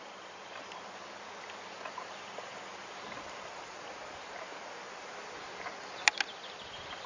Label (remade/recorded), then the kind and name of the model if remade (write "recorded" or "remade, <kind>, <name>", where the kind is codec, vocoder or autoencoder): recorded